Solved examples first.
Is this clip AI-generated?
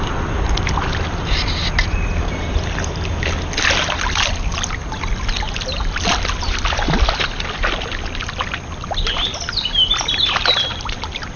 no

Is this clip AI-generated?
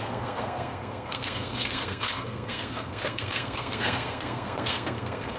yes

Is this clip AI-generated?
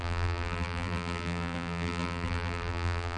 yes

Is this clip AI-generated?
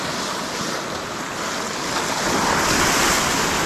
no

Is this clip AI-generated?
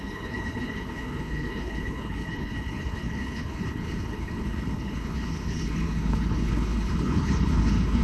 yes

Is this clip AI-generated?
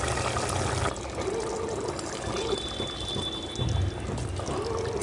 no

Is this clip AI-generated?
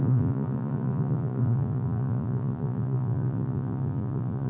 yes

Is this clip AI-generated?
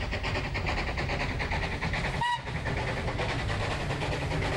no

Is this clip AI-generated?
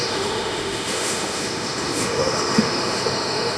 yes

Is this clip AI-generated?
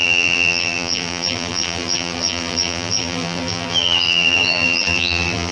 yes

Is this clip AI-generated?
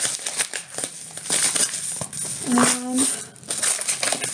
no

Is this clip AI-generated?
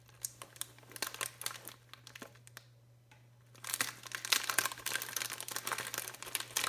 no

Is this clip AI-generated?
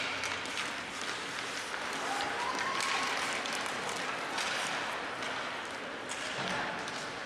no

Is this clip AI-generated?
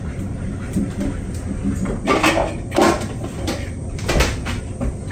no